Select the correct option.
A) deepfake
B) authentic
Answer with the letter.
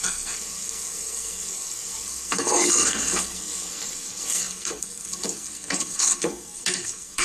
A